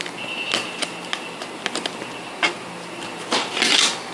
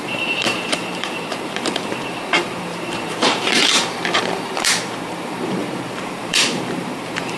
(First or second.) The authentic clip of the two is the first